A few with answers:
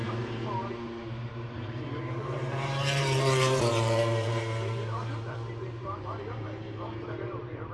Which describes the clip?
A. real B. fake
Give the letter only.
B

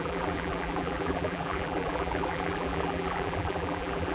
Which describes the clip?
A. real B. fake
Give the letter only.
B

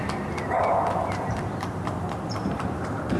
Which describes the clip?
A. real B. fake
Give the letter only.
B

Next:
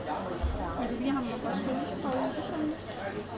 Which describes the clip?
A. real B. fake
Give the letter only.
A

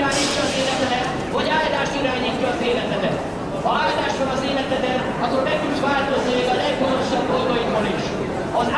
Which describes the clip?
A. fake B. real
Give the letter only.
A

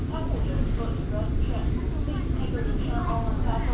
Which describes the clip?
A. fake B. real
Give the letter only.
B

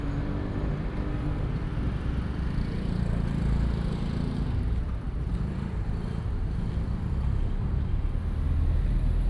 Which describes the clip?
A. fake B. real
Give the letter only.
A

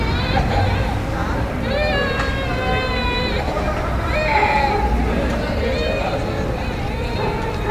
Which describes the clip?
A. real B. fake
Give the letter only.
A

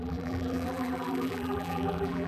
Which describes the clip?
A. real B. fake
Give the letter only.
B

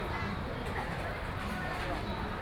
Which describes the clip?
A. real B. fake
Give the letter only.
B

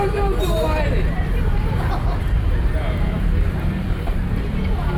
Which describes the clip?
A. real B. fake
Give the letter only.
B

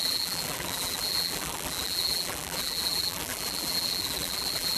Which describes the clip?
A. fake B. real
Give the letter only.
A